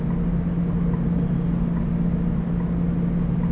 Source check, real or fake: real